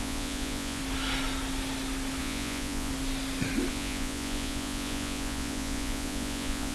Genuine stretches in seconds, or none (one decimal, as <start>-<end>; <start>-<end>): 0.8-2.2; 2.9-3.7